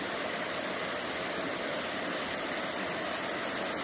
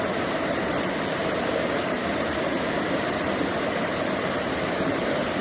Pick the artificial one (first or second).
second